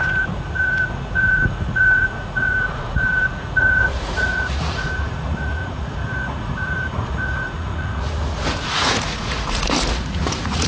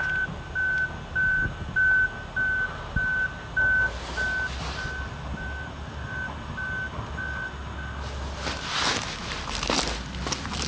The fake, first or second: first